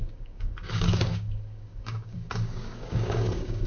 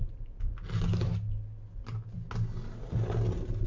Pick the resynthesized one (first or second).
first